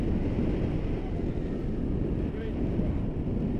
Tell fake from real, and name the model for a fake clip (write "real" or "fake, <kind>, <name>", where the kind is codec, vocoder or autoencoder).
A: real